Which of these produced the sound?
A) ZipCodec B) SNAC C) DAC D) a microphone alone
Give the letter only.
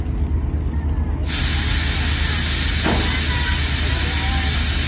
D